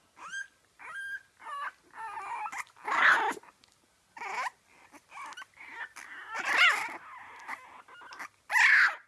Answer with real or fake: real